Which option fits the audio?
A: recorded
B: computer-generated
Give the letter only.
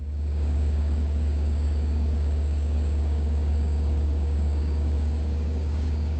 B